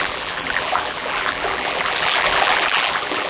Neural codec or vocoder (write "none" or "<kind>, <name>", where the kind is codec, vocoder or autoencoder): vocoder, BigVGAN v2